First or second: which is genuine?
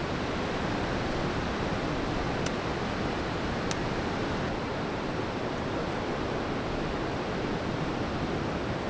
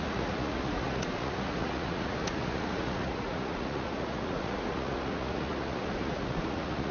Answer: first